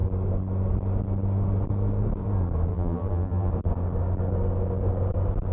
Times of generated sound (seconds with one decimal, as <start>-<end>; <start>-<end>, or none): 2.7-3.5